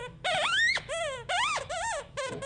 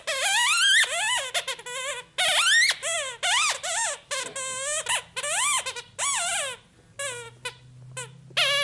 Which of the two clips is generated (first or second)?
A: first